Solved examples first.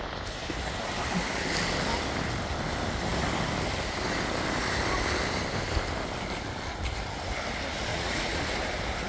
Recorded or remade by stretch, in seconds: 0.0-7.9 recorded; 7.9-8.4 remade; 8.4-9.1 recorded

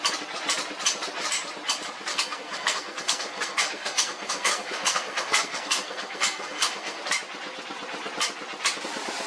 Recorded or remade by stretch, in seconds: 0.0-2.1 recorded; 2.1-7.0 remade; 7.0-9.3 recorded

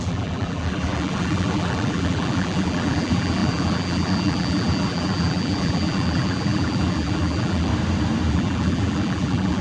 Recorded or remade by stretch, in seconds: 0.0-7.7 remade; 7.7-8.3 recorded; 8.3-9.6 remade

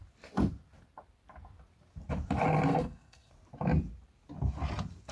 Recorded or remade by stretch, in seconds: 0.0-2.7 recorded; 2.7-3.3 remade; 3.3-5.1 recorded

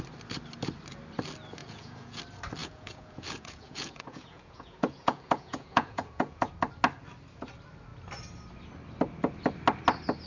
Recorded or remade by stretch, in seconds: 0.0-1.6 recorded; 1.6-2.2 remade; 2.2-2.6 recorded; 2.6-6.5 remade; 6.5-10.3 recorded

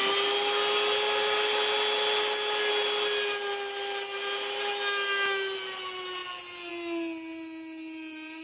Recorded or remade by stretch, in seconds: 0.0-8.4 recorded